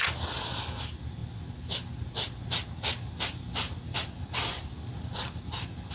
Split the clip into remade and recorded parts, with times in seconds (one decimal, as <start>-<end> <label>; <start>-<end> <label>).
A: 0.0-5.9 recorded